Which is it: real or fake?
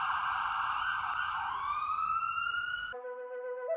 real